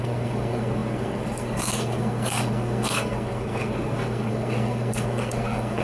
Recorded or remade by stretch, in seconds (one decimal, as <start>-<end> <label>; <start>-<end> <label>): 0.0-5.8 remade